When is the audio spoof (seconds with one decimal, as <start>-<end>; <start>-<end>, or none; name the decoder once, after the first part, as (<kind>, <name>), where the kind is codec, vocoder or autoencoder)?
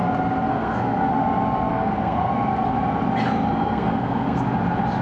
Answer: 0.5-1.1 (codec, SNAC); 1.7-2.3; 3.5-4.4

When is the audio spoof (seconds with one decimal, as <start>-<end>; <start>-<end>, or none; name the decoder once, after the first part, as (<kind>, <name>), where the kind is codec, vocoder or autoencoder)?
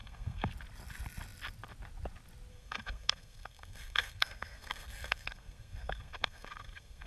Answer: 0.0-0.5 (codec, SNAC); 2.5-7.1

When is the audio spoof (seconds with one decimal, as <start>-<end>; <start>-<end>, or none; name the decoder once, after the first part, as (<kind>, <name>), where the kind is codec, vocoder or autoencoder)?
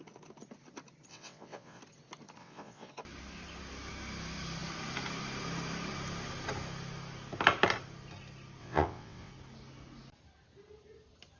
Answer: 1.1-1.8 (vocoder, WaveNeXt); 2.4-2.9; 8.6-9.3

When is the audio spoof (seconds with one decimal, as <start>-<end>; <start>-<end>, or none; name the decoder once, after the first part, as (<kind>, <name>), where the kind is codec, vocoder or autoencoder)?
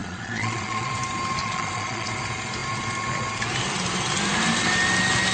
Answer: 0.0-0.9 (vocoder, Vocos); 1.4-2.1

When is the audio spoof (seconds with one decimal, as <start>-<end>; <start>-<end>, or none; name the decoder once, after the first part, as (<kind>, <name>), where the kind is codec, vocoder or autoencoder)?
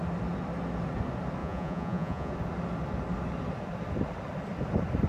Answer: 1.4-2.3 (vocoder, Vocos)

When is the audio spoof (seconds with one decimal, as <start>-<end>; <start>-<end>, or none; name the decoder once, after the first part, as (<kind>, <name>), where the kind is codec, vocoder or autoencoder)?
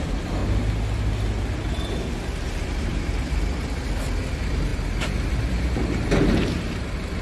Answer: 0.0-0.4 (vocoder, BigVGAN v2); 2.1-2.9; 4.2-7.2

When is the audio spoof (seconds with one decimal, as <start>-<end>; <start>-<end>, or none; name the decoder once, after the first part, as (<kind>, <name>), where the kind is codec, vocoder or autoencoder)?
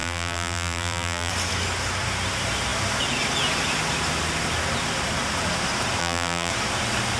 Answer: 0.0-1.3 (vocoder, BigVGAN v2); 6.0-6.5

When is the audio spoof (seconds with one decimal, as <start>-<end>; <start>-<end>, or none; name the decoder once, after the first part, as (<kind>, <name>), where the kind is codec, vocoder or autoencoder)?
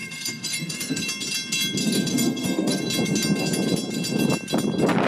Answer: 0.0-1.0 (codec, SNAC); 1.8-2.8